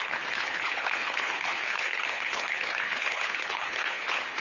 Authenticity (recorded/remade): remade